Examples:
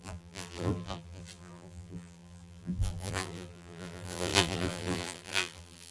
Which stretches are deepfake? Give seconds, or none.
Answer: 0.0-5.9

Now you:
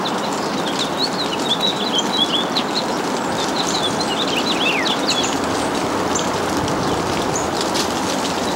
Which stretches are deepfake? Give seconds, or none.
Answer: 1.0-5.3